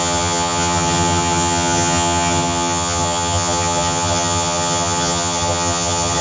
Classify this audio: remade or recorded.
remade